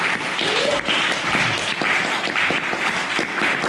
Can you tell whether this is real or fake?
real